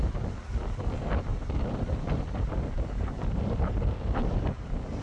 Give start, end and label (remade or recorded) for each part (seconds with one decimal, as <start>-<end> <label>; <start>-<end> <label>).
0.0-1.3 recorded; 1.3-3.8 remade; 3.8-5.0 recorded